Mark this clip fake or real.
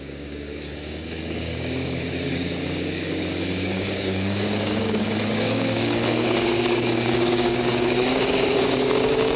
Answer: fake